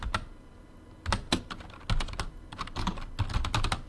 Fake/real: real